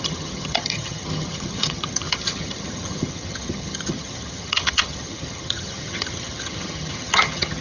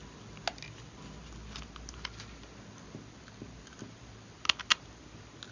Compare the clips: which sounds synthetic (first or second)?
first